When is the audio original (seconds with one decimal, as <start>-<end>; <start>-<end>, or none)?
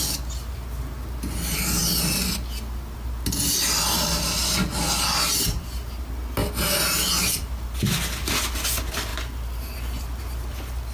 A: 0.0-10.9